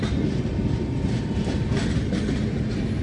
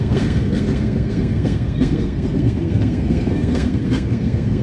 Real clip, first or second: first